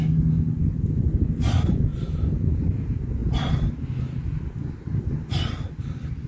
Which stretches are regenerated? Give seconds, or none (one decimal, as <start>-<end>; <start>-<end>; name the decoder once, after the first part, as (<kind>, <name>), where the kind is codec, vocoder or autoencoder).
none